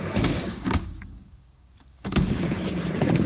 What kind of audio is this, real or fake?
fake